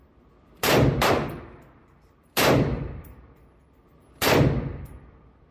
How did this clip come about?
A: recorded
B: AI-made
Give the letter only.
B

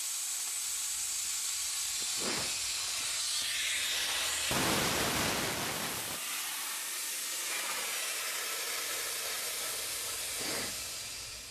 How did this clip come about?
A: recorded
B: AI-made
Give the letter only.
A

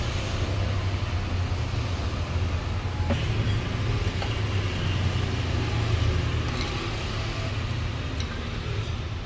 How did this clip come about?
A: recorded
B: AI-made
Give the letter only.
A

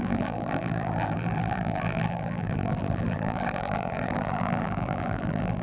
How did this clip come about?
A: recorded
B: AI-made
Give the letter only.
B